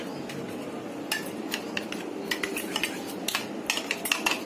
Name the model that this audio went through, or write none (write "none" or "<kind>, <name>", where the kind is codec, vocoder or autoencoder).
none